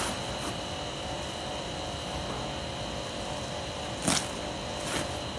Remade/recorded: recorded